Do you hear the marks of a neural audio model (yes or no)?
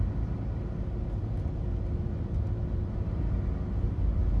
no